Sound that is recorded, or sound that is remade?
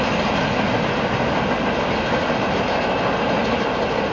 recorded